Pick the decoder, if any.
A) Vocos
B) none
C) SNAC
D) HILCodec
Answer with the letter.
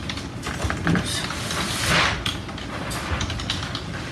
B